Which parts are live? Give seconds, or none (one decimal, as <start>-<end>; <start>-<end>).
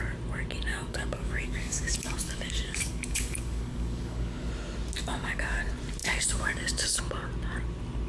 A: 0.0-0.7; 4.5-5.0; 5.6-6.0; 7.0-8.1